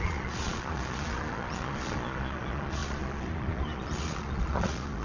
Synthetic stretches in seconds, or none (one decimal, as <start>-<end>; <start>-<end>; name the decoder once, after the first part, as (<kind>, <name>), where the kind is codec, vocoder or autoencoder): 0.0-5.0 (vocoder, Vocos)